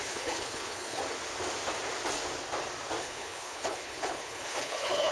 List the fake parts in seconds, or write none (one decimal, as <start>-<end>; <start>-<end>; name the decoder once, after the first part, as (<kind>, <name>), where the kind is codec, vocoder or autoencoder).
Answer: 0.0-1.0 (codec, HILCodec); 3.0-5.1